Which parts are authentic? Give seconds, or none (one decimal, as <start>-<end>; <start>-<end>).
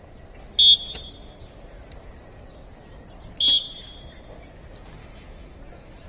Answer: 0.0-5.0; 5.6-6.1